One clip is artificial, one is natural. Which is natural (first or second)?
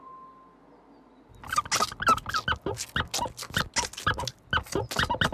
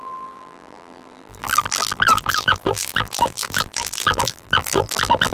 first